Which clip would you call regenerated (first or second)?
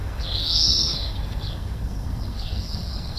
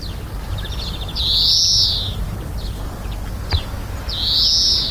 first